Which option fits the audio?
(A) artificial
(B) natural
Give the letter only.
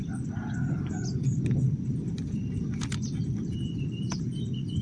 B